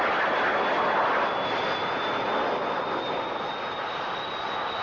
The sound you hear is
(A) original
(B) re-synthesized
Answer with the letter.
A